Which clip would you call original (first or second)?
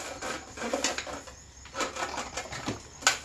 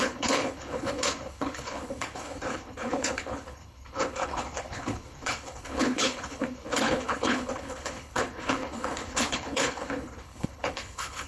first